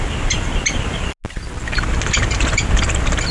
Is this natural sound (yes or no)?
yes